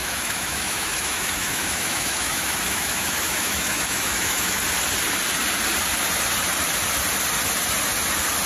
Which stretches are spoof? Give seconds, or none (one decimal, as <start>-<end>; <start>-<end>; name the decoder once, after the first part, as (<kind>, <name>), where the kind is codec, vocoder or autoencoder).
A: 0.0-4.6 (autoencoder, DAC-VAE)